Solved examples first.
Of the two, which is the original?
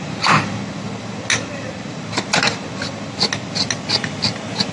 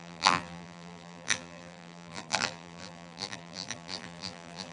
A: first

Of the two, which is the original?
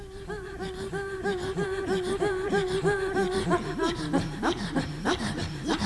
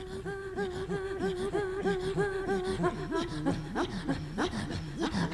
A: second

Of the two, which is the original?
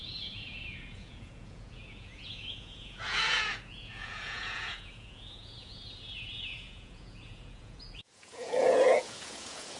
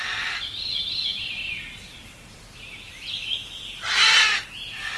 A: second